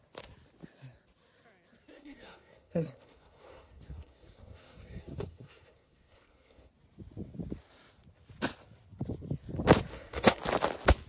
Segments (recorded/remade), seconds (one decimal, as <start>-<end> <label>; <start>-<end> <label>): 0.0-1.9 recorded; 1.9-6.7 remade; 6.7-9.9 recorded; 9.9-10.4 remade; 10.4-11.1 recorded